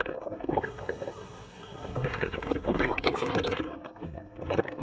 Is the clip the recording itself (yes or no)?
no